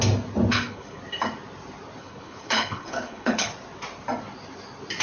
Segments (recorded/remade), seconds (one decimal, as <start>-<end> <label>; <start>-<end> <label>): 0.0-0.5 recorded; 0.5-1.0 remade; 1.0-2.0 recorded; 2.0-3.5 remade; 3.5-5.0 recorded